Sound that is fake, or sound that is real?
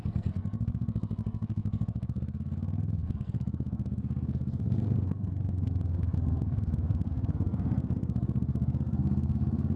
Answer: fake